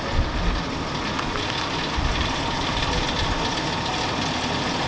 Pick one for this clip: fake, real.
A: real